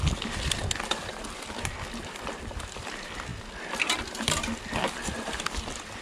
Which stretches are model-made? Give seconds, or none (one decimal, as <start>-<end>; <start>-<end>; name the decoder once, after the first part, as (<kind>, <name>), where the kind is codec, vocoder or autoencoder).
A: none